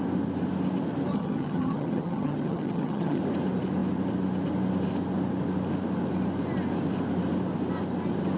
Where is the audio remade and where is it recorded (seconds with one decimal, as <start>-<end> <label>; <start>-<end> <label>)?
0.0-1.1 recorded; 1.1-3.2 remade; 3.2-8.4 recorded